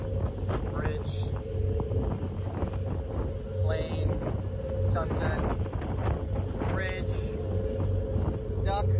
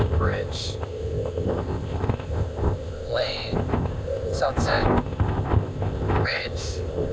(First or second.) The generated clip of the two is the second